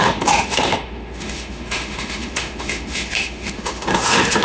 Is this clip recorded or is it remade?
remade